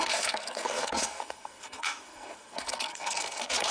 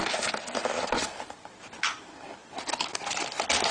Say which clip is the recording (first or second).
second